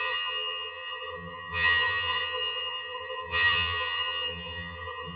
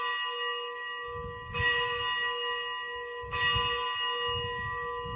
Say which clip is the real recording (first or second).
second